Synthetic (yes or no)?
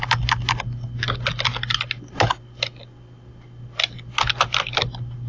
no